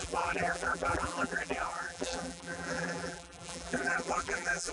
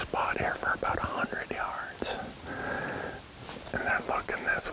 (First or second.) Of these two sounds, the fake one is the first